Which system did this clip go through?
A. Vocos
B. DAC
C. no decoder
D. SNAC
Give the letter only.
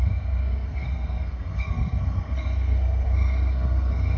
D